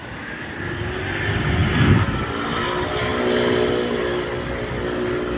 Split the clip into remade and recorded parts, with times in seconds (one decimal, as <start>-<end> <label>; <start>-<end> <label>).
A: 0.0-5.4 recorded